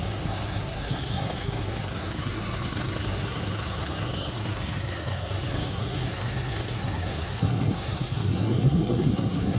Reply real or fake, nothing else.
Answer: fake